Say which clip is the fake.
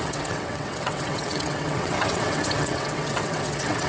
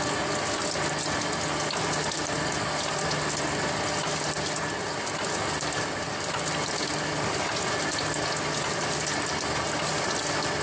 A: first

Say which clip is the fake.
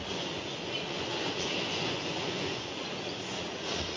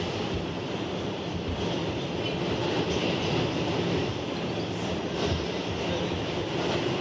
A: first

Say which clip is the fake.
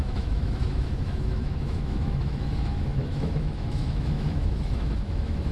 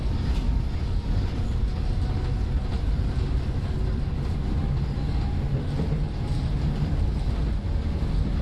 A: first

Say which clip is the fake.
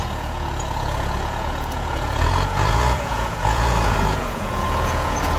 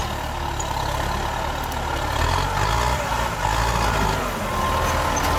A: first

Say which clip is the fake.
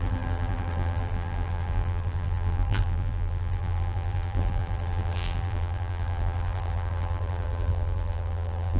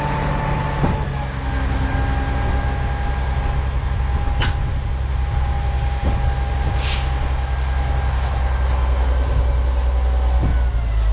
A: first